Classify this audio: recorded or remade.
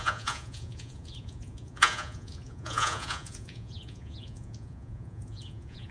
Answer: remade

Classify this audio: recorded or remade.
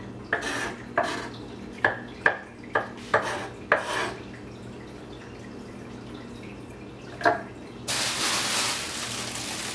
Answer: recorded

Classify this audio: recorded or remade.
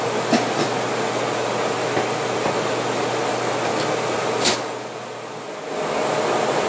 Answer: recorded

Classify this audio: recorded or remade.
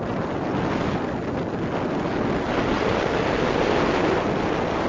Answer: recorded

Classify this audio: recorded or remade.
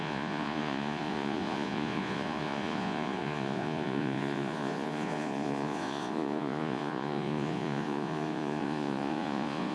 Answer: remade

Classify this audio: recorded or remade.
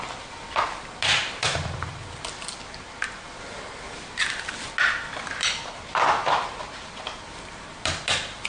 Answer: recorded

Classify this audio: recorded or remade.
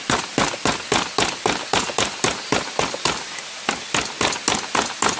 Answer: recorded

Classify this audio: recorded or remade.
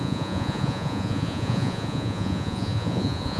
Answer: remade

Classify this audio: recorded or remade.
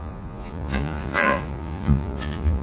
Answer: remade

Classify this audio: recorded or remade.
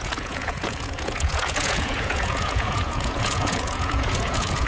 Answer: remade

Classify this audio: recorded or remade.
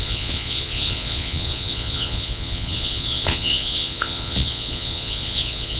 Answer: remade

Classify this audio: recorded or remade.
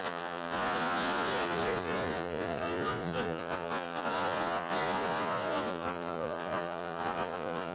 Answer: remade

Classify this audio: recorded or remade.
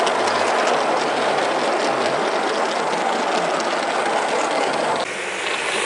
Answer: recorded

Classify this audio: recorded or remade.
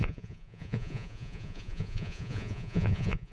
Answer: remade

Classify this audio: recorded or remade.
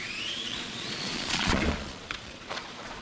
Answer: remade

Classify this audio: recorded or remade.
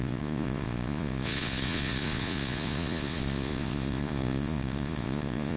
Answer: remade